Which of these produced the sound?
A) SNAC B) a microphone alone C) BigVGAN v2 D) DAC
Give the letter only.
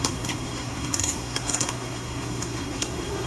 A